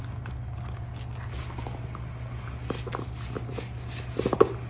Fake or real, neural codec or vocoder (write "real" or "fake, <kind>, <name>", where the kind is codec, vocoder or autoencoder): real